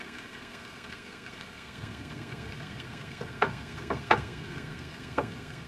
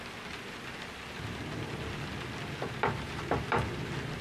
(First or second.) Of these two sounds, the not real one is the first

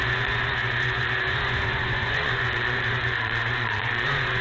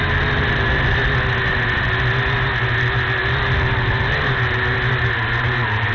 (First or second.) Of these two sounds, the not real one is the first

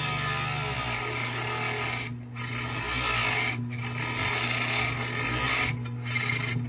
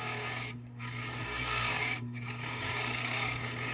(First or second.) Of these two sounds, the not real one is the second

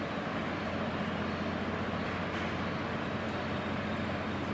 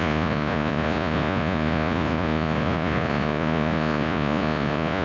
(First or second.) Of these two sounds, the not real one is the second